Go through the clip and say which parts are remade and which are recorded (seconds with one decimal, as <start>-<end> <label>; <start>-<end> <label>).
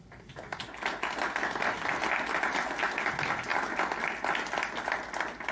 0.0-5.5 recorded